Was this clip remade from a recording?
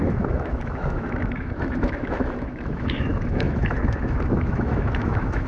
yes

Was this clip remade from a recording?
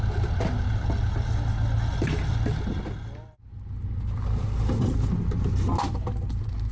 no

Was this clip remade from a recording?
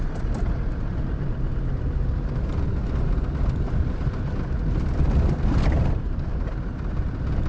no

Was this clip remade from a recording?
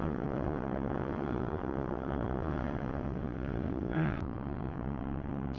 yes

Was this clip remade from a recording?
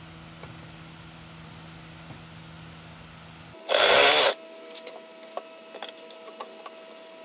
no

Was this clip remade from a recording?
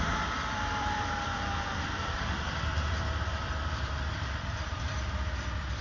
yes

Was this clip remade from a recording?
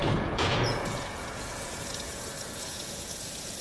yes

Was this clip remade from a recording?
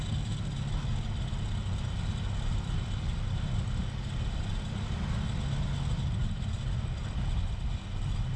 no